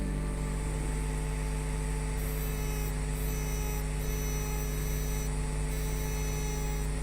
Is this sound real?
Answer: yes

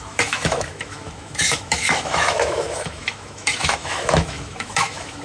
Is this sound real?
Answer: no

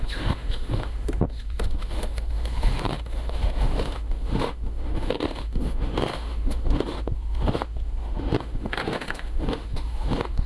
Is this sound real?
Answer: no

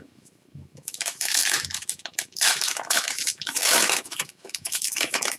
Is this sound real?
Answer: no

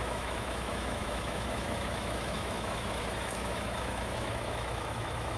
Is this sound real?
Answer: no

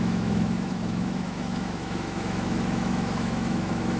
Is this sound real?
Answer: no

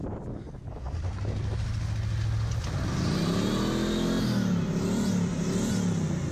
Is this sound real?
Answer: yes